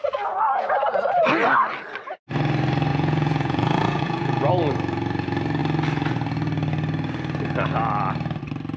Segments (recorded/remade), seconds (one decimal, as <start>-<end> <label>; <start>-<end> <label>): 0.0-2.9 recorded; 2.9-4.5 remade; 4.5-8.8 recorded